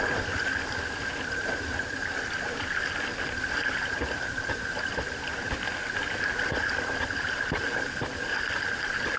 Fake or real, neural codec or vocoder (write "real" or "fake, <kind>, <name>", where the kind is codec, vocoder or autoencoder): real